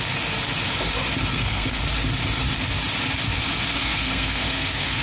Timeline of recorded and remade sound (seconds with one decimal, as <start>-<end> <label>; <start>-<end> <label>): 0.0-1.3 recorded; 1.3-1.8 remade; 1.8-3.7 recorded; 3.7-5.0 remade